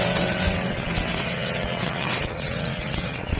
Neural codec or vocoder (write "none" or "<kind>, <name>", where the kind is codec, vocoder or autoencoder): vocoder, WaveNeXt